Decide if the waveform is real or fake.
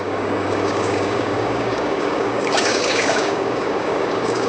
fake